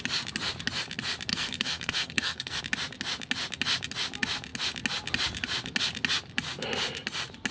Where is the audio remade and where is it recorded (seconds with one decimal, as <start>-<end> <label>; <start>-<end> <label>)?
0.0-1.3 recorded; 1.3-2.6 remade; 2.6-7.5 recorded